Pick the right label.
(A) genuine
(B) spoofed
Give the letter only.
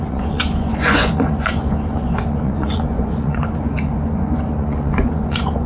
B